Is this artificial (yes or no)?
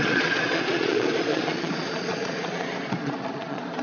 yes